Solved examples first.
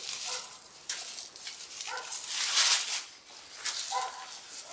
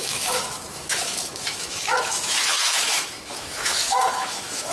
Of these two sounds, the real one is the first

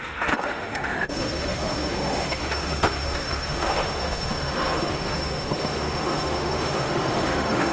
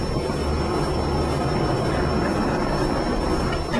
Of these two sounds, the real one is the second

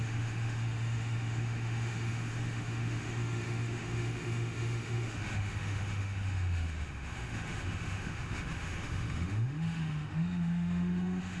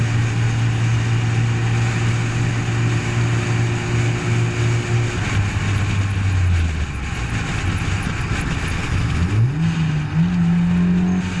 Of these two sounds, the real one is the second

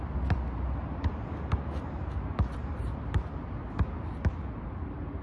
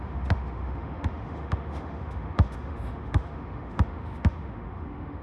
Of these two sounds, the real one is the first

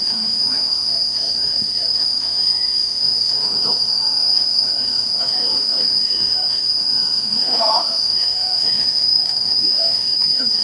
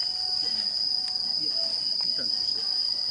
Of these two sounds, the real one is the second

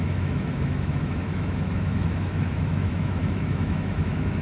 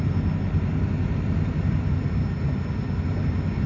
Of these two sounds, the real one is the second